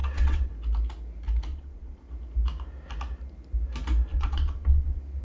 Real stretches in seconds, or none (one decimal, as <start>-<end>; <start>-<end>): 0.5-1.5; 2.1-4.1